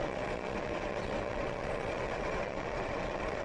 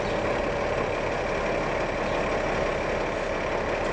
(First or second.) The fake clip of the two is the first